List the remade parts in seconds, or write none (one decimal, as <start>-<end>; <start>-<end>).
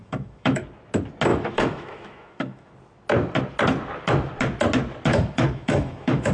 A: 0.0-0.6; 1.3-2.7; 5.1-6.3